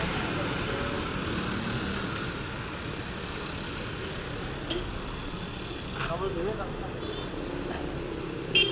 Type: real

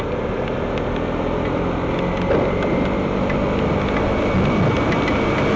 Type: real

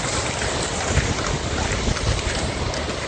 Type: real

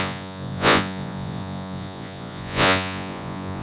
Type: fake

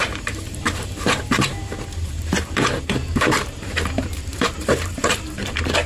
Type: fake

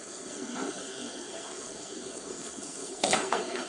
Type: fake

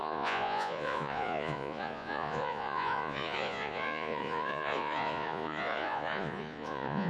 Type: fake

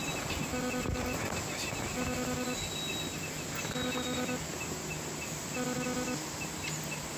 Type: real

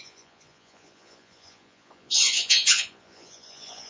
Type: fake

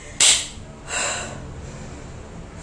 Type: real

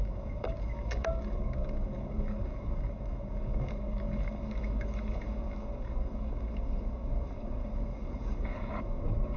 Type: fake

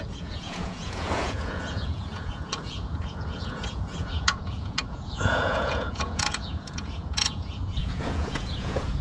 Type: fake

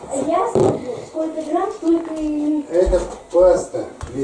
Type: real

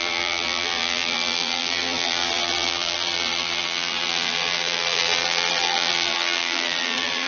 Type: fake